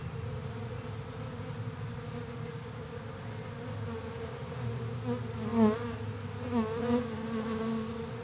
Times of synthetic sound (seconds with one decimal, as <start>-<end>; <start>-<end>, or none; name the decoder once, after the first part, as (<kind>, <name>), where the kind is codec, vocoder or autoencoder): none